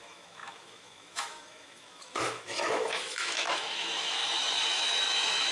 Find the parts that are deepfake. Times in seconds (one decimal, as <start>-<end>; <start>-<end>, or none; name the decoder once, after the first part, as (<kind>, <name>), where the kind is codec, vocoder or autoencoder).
0.0-4.2 (autoencoder, DAC-VAE); 4.7-5.5